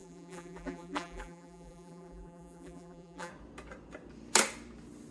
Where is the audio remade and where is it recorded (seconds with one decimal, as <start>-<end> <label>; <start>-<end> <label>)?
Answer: 0.0-3.3 remade; 3.3-5.1 recorded